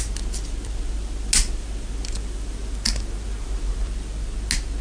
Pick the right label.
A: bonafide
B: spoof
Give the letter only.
A